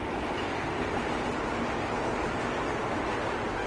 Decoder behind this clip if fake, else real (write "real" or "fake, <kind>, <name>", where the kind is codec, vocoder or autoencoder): real